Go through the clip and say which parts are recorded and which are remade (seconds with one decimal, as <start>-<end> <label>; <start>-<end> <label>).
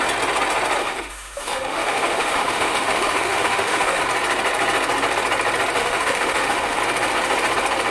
0.0-0.8 recorded; 0.8-4.0 remade; 4.0-5.8 recorded; 5.8-6.8 remade; 6.8-7.9 recorded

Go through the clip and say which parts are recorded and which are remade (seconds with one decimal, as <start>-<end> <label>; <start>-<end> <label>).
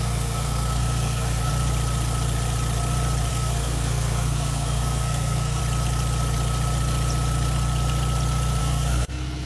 0.0-1.5 remade; 1.5-3.3 recorded; 3.3-5.6 remade; 5.6-8.6 recorded; 8.6-9.5 remade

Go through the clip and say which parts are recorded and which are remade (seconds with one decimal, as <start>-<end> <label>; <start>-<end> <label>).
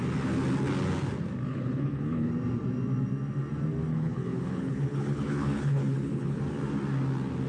0.0-1.5 recorded; 1.5-2.3 remade; 2.3-3.9 recorded; 3.9-6.4 remade; 6.4-7.5 recorded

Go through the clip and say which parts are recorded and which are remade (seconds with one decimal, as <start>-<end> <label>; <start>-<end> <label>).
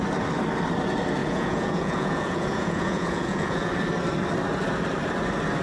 0.0-1.2 recorded; 1.2-3.7 remade; 3.7-5.6 recorded